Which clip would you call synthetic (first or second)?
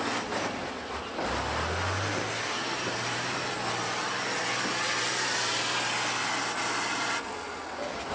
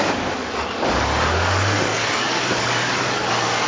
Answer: second